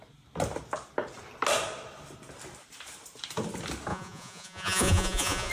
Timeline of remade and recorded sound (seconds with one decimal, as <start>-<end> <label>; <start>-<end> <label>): 0.0-3.9 recorded; 3.9-5.5 remade